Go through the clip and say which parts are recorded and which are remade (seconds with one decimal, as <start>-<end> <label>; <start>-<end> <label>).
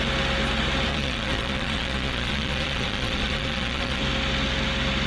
0.0-0.9 recorded; 0.9-4.0 remade; 4.0-5.1 recorded